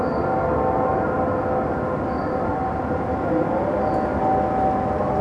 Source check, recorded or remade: recorded